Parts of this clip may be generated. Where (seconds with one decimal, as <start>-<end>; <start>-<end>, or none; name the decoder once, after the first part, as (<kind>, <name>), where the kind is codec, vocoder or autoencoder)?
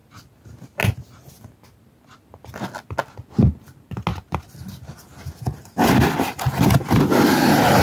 none